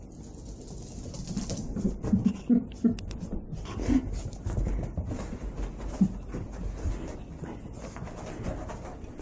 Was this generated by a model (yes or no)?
no